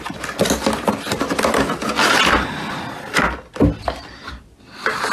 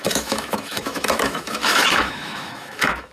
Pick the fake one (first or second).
second